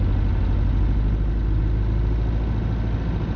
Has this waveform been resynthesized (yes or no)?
no